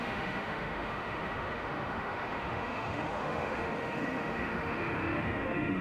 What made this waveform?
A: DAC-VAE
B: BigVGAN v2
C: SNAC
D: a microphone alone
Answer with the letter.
A